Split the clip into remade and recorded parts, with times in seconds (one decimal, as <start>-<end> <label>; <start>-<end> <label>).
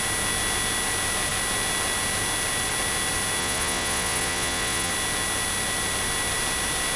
0.0-3.4 recorded; 3.4-4.9 remade; 4.9-7.0 recorded